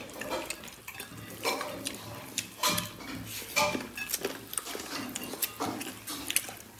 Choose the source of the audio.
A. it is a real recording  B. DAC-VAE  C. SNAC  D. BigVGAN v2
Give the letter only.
A